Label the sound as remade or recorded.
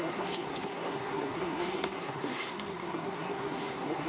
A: remade